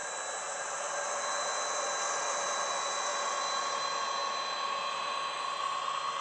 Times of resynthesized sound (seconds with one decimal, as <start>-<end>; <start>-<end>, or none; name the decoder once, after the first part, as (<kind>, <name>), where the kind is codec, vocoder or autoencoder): 0.0-1.7 (vocoder, BigVGAN v2); 3.1-3.6